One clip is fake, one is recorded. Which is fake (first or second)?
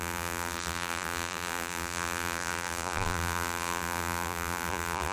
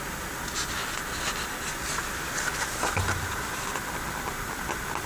first